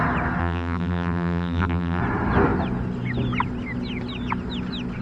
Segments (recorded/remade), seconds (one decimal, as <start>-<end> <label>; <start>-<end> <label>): 0.0-0.4 recorded; 0.4-2.0 remade; 2.0-5.0 recorded